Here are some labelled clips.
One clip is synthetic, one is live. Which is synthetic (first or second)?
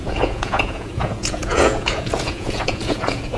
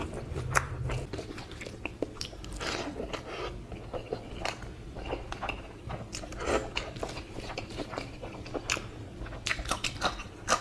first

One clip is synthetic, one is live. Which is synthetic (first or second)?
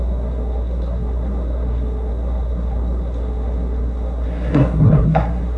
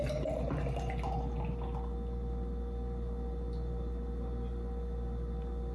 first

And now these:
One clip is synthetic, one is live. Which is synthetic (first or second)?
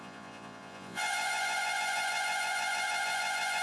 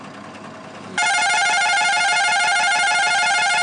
first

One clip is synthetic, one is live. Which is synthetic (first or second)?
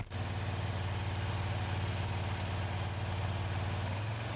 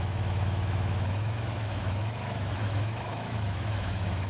second